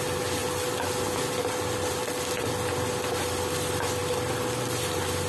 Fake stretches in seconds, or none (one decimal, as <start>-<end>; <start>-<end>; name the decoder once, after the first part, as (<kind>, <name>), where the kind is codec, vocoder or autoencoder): none

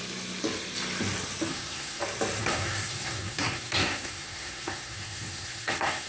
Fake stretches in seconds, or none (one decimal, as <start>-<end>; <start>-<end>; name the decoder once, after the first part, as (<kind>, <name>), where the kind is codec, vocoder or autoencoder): 1.5-2.0 (codec, SNAC); 2.4-6.1

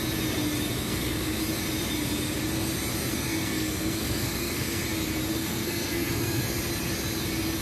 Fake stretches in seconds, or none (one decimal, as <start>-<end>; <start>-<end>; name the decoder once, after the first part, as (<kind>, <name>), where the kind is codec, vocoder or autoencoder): 0.8-1.4 (codec, SNAC); 3.1-4.8; 5.3-6.4